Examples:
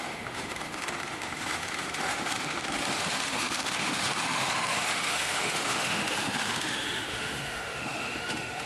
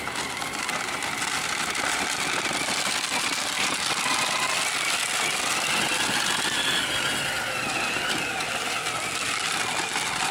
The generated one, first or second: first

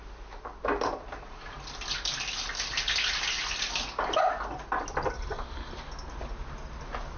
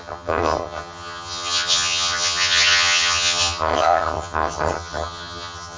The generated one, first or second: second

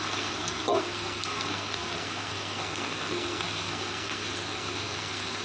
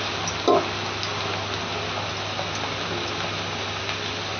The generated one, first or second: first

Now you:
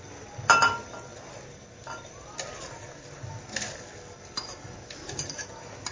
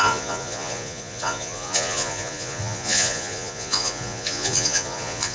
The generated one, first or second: second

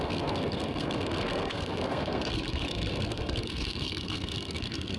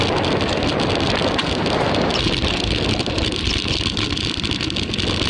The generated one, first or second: first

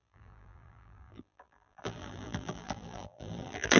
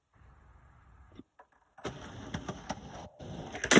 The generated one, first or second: first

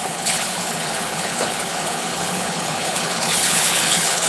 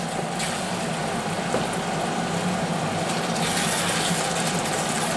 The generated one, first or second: first